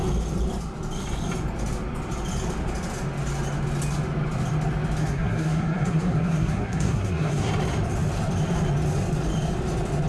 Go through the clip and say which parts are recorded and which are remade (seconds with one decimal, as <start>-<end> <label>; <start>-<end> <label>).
0.0-5.0 recorded; 5.0-7.5 remade; 7.5-10.1 recorded